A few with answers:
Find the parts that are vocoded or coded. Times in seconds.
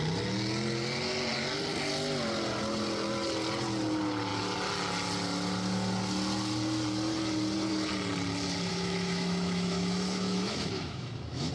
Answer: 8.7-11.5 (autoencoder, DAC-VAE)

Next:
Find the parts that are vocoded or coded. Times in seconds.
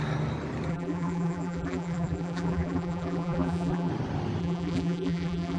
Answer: 0.7-3.9 (vocoder, BigVGAN v2); 4.4-5.6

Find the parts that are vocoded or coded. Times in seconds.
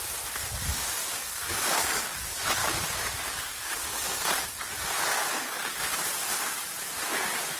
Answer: 0.7-2.2 (codec, DAC); 2.6-4.2; 5.1-5.8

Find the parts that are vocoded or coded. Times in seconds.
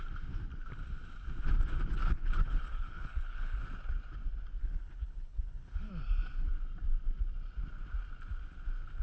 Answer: 2.0-3.6 (codec, HILCodec); 4.6-5.9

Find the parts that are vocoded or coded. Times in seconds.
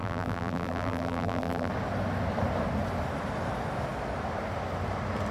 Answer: 0.0-1.7 (vocoder, BigVGAN v2)